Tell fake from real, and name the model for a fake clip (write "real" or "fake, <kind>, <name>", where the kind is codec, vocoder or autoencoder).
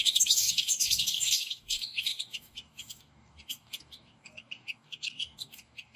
fake, codec, DAC